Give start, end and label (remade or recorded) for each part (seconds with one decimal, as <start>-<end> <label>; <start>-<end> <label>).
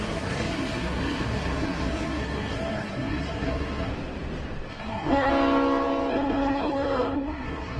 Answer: 0.0-3.9 remade; 3.9-4.7 recorded; 4.7-5.3 remade; 5.3-6.1 recorded; 6.1-7.8 remade